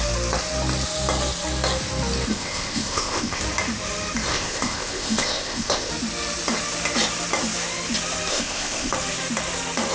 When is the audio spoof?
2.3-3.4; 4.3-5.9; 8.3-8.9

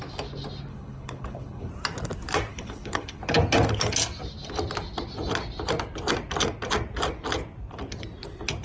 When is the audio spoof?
0.7-1.7; 2.5-3.2

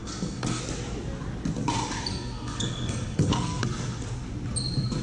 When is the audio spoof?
0.0-0.6; 2.1-3.6

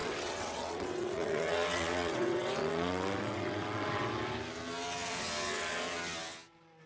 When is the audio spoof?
0.0-4.1

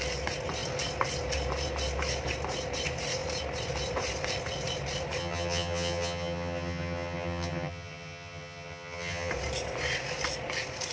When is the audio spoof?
5.2-9.3

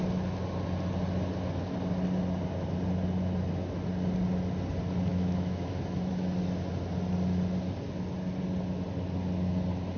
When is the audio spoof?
5.1-6.1

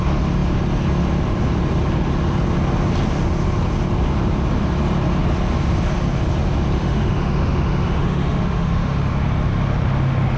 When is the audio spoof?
6.8-9.1